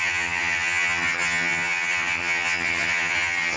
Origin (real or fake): fake